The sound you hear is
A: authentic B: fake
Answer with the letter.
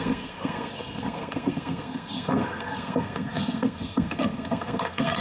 B